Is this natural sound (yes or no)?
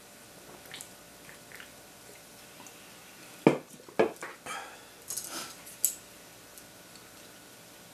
yes